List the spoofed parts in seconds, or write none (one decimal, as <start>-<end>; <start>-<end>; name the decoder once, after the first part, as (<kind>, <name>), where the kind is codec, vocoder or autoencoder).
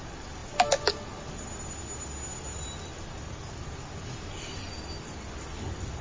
none